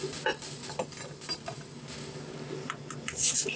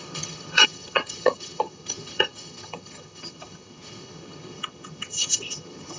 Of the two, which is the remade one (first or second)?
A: second